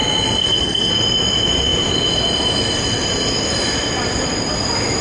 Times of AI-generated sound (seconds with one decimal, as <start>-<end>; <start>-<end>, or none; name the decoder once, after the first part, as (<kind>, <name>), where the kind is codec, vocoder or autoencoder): 0.4-0.9 (codec, SNAC)